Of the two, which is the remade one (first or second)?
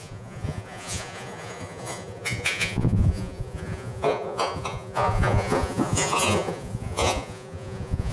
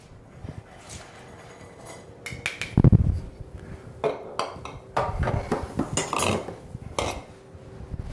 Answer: first